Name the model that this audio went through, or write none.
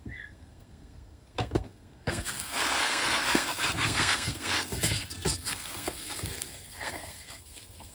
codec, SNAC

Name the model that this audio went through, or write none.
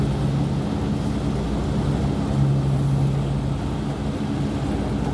none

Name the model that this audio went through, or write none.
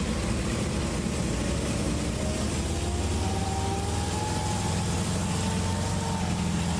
none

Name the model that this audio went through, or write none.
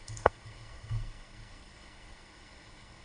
codec, SNAC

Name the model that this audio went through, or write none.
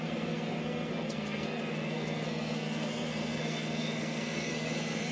codec, SNAC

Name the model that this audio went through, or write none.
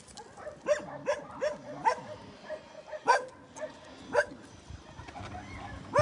none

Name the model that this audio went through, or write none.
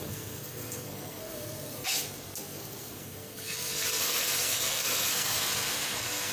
codec, SNAC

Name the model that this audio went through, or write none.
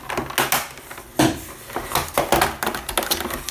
none